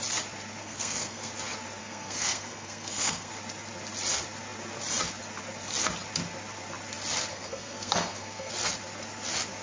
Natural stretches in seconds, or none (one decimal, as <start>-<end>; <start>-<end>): 0.0-0.6; 1.3-1.8; 3.3-7.3; 8.5-9.6